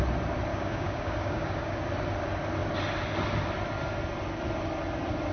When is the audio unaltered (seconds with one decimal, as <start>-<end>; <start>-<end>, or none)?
0.0-0.5; 1.8-5.3